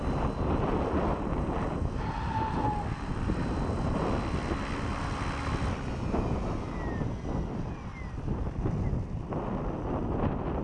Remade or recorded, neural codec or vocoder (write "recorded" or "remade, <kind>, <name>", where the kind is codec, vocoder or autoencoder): recorded